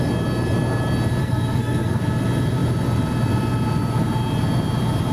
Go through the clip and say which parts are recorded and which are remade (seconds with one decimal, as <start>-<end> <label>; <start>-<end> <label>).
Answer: 0.0-1.2 recorded; 1.2-2.0 remade; 2.0-5.1 recorded